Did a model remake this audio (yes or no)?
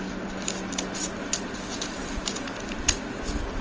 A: no